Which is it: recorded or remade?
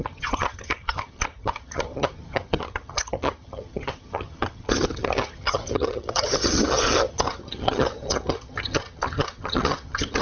remade